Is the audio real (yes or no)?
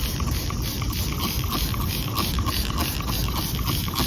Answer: yes